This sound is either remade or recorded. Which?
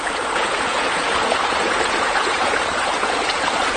remade